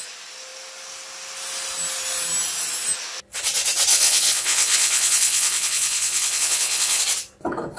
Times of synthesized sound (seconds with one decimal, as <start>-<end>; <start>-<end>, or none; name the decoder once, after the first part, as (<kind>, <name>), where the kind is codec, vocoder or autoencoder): 3.9-7.0 (vocoder, WaveNeXt)